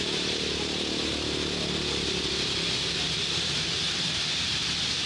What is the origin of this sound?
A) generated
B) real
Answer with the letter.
A